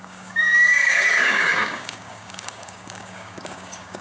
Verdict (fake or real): fake